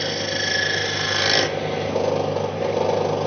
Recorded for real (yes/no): yes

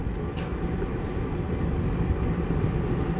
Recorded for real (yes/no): yes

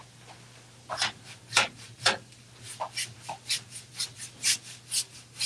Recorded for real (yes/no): yes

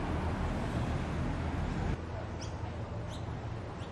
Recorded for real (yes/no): yes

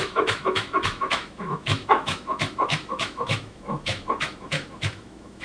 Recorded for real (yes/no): no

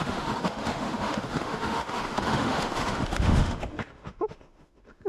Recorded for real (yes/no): no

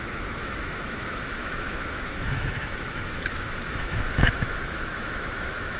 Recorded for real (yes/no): no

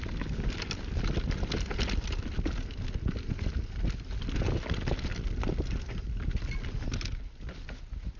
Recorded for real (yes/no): yes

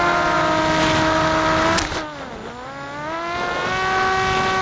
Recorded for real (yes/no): yes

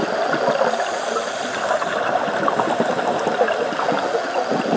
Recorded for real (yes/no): yes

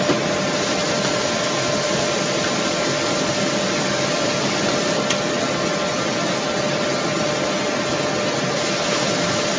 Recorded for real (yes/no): yes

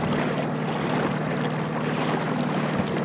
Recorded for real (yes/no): yes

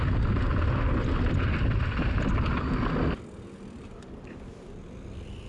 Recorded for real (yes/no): yes